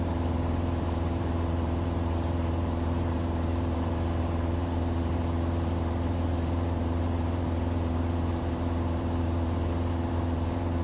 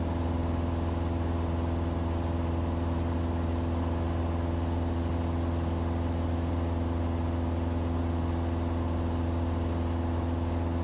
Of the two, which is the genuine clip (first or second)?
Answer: second